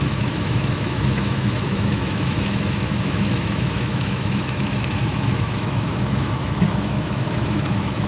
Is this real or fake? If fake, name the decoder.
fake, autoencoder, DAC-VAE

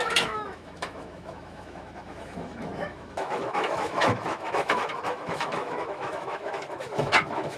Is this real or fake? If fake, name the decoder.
fake, autoencoder, DAC-VAE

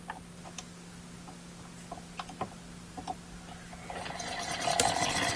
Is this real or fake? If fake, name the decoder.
real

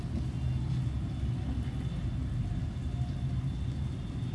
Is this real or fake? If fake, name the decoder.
real